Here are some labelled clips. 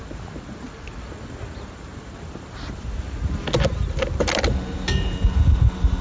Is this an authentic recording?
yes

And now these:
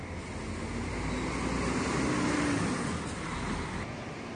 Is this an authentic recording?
yes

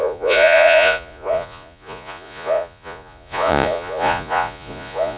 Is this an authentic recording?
no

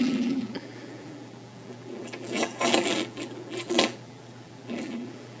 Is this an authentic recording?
no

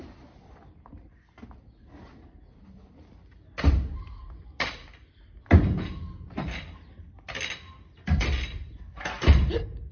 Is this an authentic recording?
yes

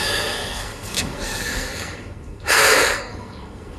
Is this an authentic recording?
no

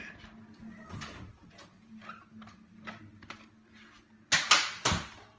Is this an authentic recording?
yes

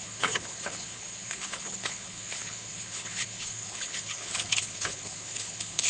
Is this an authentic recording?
no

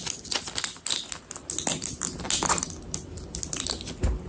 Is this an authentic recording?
yes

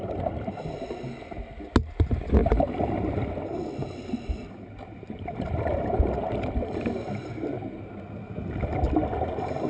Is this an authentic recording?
yes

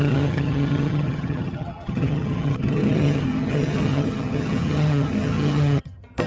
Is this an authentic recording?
no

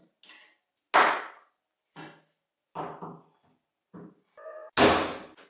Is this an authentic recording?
yes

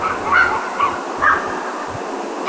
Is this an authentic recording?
yes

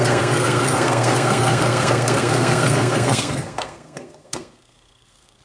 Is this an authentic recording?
no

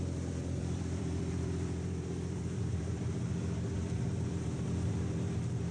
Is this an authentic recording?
no